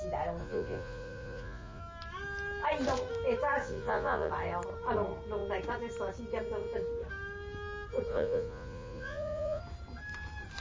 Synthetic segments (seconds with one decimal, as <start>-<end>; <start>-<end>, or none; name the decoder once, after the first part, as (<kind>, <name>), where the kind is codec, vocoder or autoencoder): 0.4-1.8 (vocoder, Vocos); 3.6-4.3; 8.1-9.6